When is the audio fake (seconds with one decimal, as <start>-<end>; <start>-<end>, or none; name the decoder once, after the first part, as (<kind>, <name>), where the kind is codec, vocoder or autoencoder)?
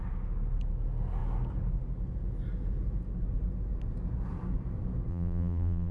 5.1-5.9 (vocoder, BigVGAN v2)